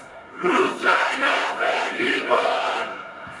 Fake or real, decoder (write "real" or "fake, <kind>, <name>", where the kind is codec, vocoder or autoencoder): fake, codec, SNAC